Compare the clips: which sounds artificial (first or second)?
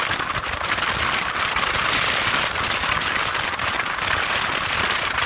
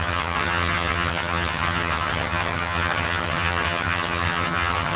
second